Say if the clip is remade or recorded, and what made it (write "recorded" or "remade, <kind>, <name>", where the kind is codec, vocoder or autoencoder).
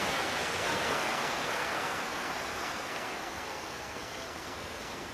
remade, codec, SNAC